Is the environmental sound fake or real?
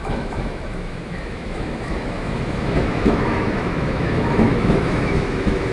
fake